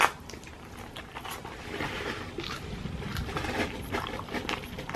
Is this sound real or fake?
real